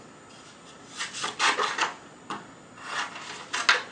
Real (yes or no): yes